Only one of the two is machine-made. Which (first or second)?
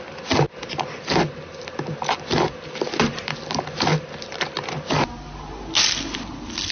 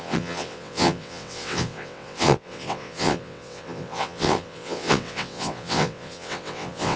second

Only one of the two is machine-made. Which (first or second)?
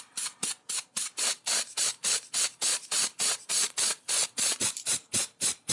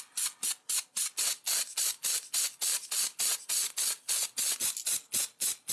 first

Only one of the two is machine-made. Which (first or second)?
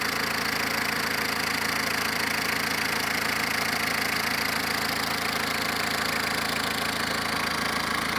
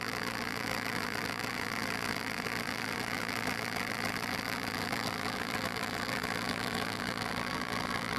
second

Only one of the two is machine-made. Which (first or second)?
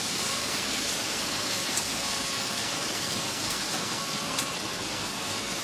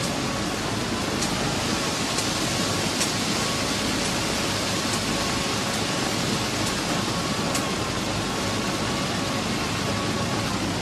first